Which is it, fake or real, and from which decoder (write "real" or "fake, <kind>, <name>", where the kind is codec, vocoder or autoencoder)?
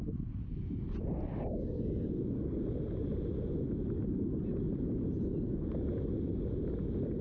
real